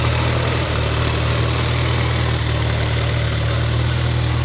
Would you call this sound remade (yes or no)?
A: no